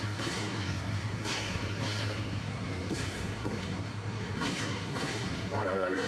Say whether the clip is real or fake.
fake